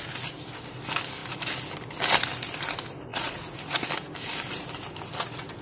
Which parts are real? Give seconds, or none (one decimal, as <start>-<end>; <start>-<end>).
0.0-3.1; 3.8-5.6